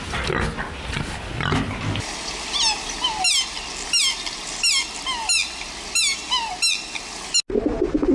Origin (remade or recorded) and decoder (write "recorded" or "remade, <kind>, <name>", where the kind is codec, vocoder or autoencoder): recorded